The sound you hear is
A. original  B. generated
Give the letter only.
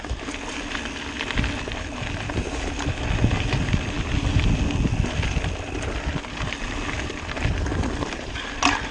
A